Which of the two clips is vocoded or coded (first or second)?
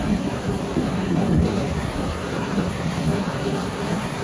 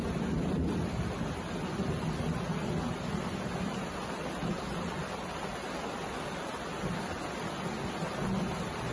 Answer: first